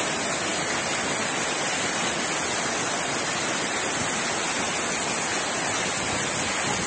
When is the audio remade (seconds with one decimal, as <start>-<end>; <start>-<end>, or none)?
none